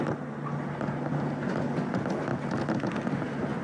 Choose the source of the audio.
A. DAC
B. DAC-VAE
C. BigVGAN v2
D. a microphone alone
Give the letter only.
D